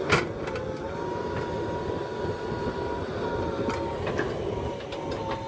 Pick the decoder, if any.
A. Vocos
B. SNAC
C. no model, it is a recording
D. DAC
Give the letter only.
C